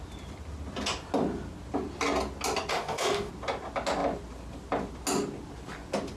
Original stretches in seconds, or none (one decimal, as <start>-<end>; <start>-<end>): 0.0-2.7; 3.3-6.2